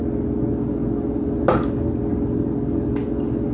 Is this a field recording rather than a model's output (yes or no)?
yes